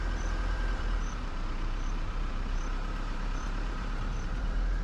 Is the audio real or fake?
fake